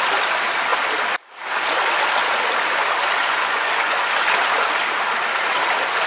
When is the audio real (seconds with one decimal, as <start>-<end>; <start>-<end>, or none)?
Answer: 0.0-3.2; 4.0-6.1